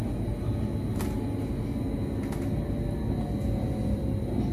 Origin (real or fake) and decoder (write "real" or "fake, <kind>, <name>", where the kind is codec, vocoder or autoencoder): real